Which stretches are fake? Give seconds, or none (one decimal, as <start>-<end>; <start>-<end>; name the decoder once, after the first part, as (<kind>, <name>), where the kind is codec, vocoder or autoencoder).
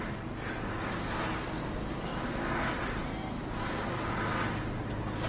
none